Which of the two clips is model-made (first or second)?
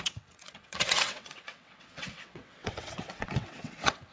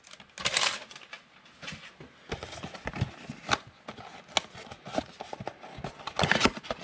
first